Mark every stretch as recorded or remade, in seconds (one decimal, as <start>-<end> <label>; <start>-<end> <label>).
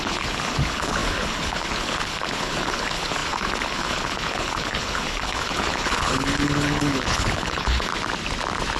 0.0-7.9 remade; 7.9-8.8 recorded